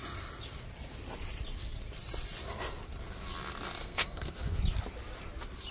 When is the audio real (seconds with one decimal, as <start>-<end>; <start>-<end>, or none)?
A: 0.0-3.8; 4.6-5.7